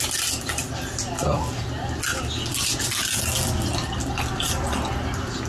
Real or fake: real